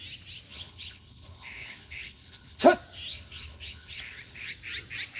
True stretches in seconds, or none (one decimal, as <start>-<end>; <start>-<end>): 0.0-0.5; 2.6-3.1; 4.5-5.2